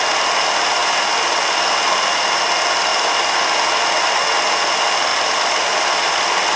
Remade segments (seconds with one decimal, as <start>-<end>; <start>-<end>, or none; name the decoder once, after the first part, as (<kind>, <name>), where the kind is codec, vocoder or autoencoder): none